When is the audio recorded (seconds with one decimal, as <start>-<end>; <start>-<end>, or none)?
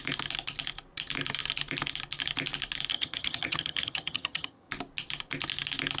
0.0-2.9; 4.7-6.0